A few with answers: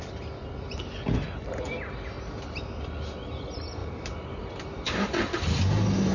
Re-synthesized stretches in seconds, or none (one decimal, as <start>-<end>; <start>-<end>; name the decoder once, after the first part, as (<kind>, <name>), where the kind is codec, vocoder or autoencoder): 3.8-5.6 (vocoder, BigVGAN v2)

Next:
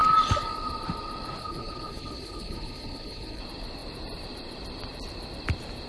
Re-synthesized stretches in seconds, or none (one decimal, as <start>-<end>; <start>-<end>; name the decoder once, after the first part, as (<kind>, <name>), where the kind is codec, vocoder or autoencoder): 1.4-3.4 (codec, HILCodec)

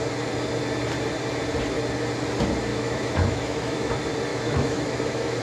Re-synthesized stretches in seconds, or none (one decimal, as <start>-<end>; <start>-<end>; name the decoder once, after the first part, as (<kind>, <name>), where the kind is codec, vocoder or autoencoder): 2.7-3.9 (autoencoder, DAC-VAE); 4.3-5.4

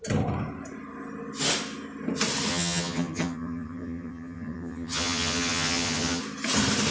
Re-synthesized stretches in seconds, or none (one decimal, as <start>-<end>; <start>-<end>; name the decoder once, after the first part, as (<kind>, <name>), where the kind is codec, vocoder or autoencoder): 2.5-6.2 (vocoder, HiFi-GAN)